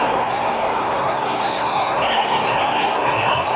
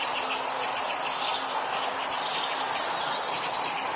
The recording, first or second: second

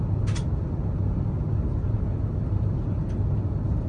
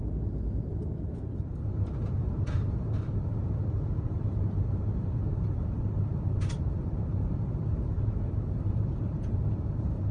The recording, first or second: first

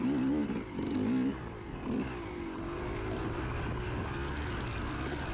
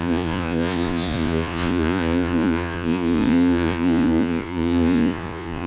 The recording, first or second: first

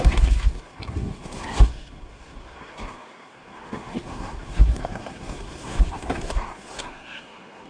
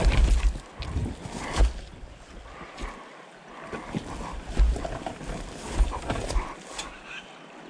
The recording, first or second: second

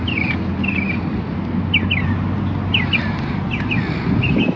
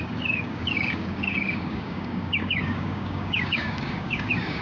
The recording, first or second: first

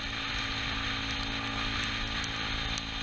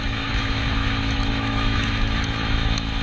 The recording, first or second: first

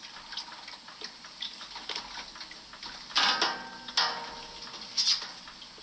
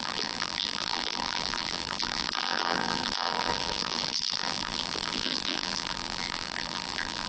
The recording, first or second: first